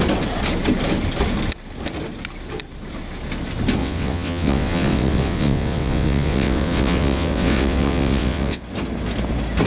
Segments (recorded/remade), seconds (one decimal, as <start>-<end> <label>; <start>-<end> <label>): 0.0-3.8 recorded; 3.8-8.6 remade; 8.6-9.7 recorded